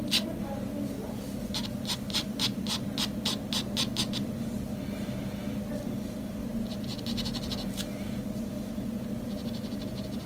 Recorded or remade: recorded